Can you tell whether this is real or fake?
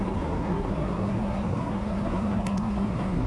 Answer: fake